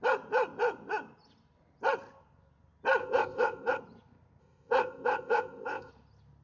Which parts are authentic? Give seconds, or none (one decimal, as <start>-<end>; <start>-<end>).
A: 0.0-3.0; 3.8-4.4; 5.9-6.4